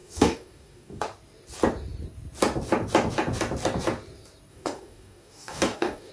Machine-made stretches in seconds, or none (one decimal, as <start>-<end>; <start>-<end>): 0.0-1.0; 4.5-6.1